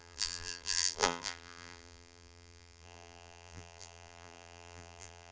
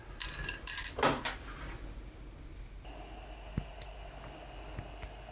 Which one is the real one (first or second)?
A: second